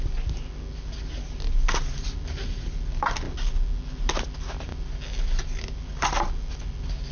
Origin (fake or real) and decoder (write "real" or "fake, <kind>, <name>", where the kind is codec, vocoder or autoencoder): real